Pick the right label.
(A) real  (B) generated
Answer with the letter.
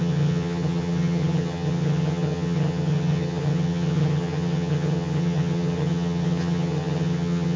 B